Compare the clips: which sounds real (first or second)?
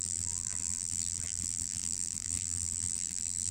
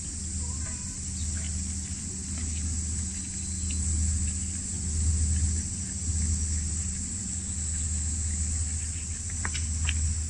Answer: second